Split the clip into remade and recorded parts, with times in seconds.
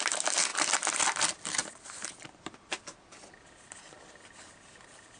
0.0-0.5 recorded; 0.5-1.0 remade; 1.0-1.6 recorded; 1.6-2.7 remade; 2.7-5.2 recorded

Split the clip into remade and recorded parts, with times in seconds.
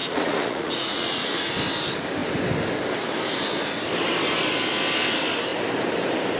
0.0-1.5 remade; 1.5-6.4 recorded